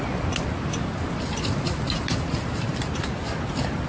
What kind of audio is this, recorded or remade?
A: recorded